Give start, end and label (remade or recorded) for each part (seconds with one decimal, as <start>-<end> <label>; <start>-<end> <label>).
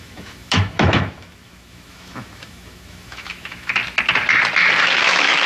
0.0-3.8 remade; 3.8-4.8 recorded; 4.8-5.5 remade